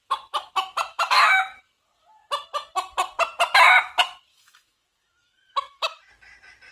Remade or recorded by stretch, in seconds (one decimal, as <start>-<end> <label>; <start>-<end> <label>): 0.0-0.9 recorded; 0.9-1.6 remade; 1.6-4.3 recorded; 4.3-6.0 remade; 6.0-6.7 recorded